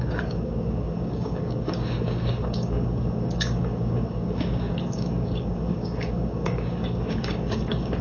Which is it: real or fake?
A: fake